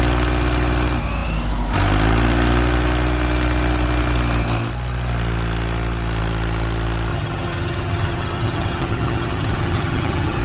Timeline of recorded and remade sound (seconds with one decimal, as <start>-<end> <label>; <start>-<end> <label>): 0.0-7.1 recorded; 7.1-10.4 remade